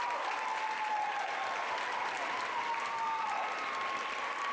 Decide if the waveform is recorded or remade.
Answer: recorded